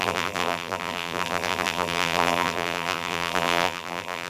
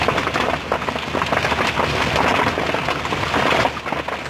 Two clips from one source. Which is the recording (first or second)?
second